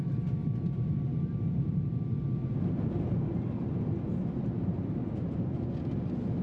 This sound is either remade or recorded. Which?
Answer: recorded